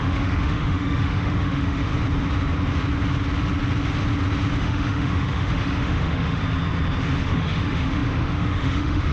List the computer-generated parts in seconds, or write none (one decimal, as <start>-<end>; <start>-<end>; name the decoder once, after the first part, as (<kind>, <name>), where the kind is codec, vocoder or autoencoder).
0.0-1.9 (autoencoder, DAC-VAE); 4.6-6.4; 7.2-9.1

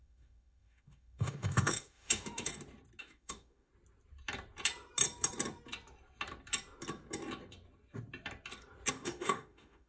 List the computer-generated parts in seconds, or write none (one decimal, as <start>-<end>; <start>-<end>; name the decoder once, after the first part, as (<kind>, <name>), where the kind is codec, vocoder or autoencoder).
0.0-2.5 (autoencoder, DAC-VAE); 3.0-3.7; 8.9-9.9

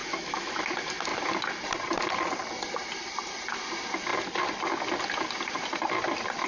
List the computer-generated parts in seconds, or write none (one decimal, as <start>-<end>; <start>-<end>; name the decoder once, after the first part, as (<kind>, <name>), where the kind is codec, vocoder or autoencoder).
0.0-0.5 (autoencoder, DAC-VAE)

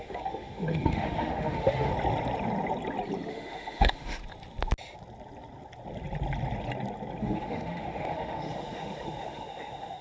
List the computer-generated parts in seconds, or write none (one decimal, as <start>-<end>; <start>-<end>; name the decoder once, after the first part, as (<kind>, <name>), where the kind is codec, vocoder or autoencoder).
0.0-1.9 (autoencoder, DAC-VAE); 3.3-4.2; 7.2-10.0

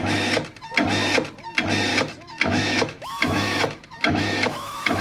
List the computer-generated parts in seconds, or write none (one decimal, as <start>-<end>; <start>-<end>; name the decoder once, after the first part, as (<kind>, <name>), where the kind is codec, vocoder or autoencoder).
1.9-5.0 (autoencoder, DAC-VAE)

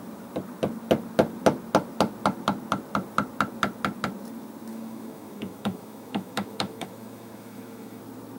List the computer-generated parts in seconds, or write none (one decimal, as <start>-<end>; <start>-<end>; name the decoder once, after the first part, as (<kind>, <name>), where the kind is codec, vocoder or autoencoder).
4.7-8.0 (autoencoder, DAC-VAE)

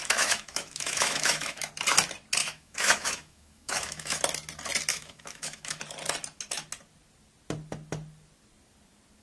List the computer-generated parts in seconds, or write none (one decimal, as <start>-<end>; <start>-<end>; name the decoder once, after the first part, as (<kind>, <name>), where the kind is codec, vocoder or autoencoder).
0.0-1.7 (autoencoder, DAC-VAE); 2.4-4.2; 4.9-5.8